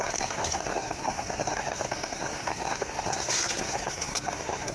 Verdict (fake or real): fake